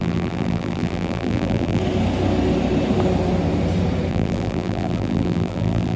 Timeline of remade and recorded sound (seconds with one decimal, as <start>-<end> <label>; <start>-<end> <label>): 0.0-1.8 remade; 1.8-4.1 recorded; 4.1-6.0 remade